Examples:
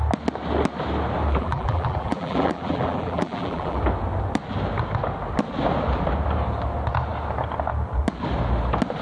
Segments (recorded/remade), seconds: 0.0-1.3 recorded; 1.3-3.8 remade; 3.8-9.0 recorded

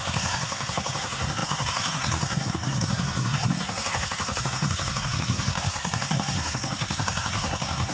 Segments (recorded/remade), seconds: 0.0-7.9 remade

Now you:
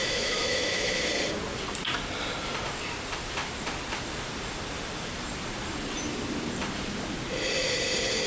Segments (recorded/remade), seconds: 0.0-1.1 remade; 1.1-8.3 recorded

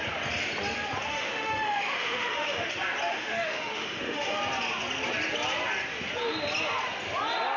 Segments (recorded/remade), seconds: 0.0-1.1 recorded; 1.1-2.7 remade; 2.7-3.1 recorded; 3.1-4.4 remade; 4.4-7.6 recorded